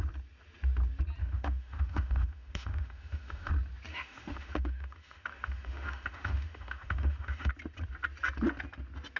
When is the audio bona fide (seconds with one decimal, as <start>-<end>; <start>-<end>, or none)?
0.0-1.2; 3.5-3.9; 7.5-9.2